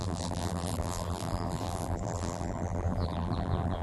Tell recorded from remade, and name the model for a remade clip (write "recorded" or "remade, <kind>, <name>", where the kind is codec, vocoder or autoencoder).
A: remade, vocoder, BigVGAN v2